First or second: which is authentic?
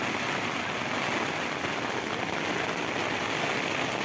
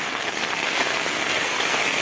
first